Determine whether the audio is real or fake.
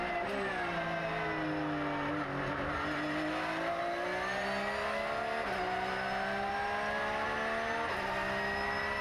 real